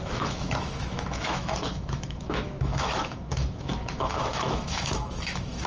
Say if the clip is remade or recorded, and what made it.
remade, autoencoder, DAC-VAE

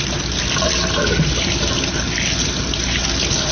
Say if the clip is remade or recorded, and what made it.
recorded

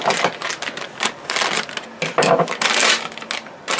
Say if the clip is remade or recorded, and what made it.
recorded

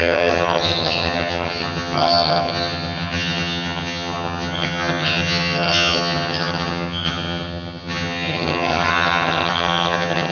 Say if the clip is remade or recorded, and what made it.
remade, vocoder, HiFi-GAN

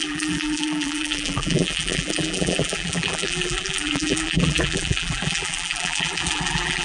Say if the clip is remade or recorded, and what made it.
remade, vocoder, BigVGAN v2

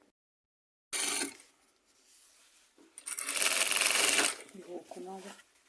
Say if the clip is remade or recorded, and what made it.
recorded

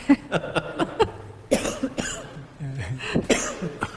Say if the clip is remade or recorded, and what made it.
recorded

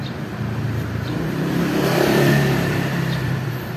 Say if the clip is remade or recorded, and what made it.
remade, vocoder, BigVGAN v2